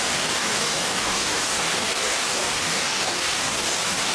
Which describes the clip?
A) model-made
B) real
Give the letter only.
A